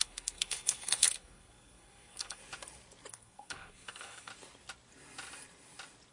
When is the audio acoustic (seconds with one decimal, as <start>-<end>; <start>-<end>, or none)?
2.4-3.1; 4.3-6.1